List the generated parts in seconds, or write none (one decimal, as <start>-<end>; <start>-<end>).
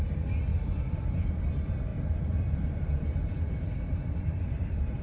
0.5-1.4; 1.9-5.0